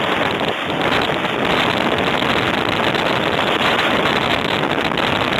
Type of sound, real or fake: fake